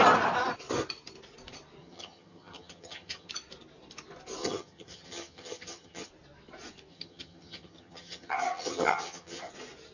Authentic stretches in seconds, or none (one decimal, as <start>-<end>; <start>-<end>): 0.0-1.8; 3.3-4.4; 6.1-6.9; 9.5-9.9